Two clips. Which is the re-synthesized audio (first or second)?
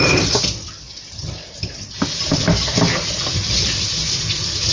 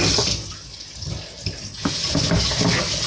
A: first